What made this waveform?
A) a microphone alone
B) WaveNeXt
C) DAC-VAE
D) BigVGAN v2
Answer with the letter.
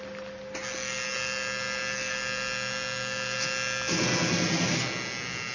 A